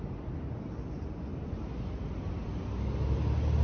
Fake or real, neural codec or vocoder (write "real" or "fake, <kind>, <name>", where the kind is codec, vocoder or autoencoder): real